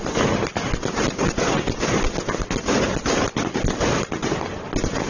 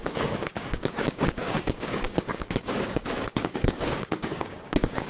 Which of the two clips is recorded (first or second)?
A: first